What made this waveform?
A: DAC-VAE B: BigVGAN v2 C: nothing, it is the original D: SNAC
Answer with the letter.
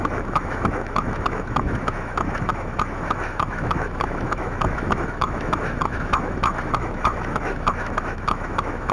A